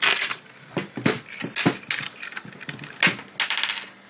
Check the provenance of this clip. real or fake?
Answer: real